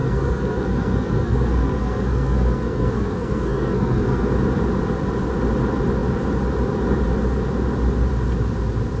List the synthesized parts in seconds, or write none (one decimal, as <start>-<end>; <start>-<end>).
0.0-4.3